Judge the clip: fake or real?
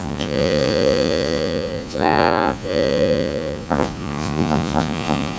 fake